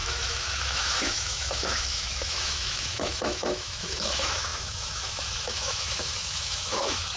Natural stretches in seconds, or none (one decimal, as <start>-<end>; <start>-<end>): none